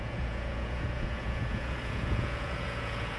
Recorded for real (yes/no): no